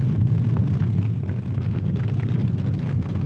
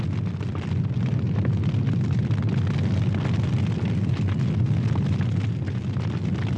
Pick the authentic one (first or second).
second